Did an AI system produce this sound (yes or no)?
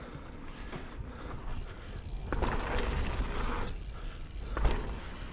no